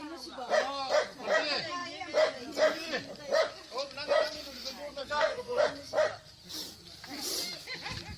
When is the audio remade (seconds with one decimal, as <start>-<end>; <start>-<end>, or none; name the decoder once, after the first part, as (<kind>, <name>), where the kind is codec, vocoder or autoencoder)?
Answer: 5.0-5.6 (codec, SNAC)